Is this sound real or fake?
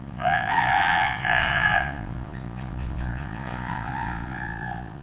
fake